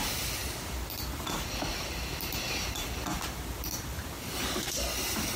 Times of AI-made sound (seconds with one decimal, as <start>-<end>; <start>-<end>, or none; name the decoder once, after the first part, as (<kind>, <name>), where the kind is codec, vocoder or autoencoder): none